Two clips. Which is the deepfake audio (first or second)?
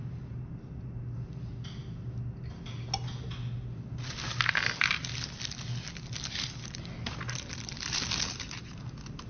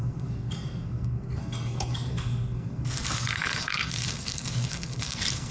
second